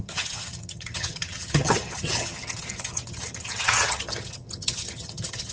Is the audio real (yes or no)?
no